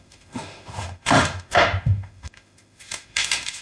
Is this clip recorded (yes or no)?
no